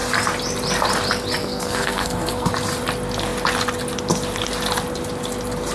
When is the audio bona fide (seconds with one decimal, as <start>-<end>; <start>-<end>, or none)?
0.0-1.4; 2.5-5.7